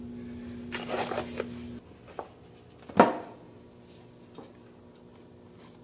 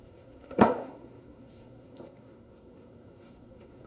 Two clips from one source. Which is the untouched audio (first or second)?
first